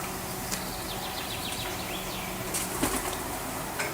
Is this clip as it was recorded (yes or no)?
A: no